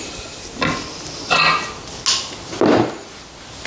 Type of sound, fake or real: real